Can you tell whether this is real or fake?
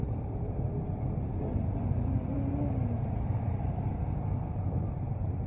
fake